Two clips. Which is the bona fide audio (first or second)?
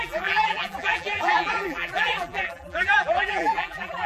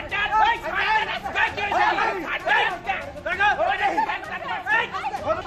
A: second